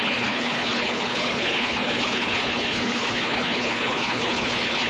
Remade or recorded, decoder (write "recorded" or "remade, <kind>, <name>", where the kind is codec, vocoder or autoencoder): remade, codec, HILCodec